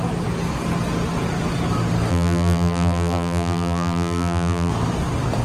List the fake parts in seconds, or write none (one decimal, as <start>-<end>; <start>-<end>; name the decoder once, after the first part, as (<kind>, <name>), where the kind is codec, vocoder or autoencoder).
2.1-4.7 (vocoder, BigVGAN v2)